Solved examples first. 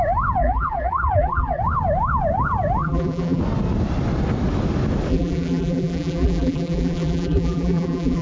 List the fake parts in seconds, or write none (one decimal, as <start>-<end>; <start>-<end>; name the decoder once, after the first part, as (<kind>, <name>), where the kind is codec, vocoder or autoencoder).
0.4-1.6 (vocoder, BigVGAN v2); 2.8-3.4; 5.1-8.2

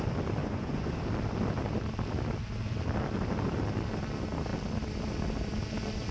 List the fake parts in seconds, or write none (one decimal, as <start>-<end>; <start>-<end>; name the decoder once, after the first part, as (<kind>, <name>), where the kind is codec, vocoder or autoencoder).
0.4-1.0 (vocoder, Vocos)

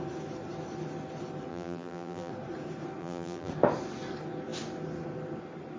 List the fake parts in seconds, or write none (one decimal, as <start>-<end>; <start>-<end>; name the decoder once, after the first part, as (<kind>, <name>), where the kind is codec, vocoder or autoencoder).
1.5-2.3 (vocoder, BigVGAN v2); 3.0-3.5